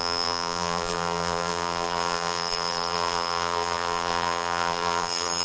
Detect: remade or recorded remade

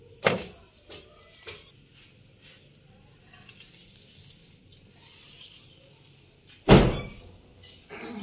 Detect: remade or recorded recorded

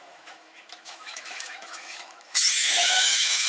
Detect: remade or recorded remade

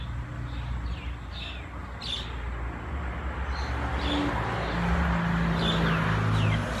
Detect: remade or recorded recorded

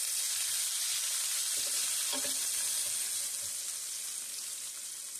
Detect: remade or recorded recorded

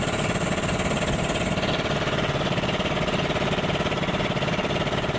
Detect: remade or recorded recorded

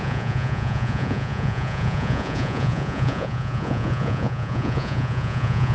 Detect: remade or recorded remade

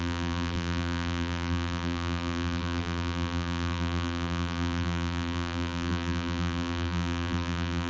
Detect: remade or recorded remade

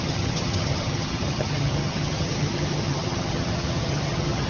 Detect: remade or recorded remade